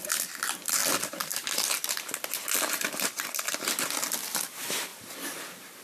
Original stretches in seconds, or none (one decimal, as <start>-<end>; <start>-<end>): 0.0-5.8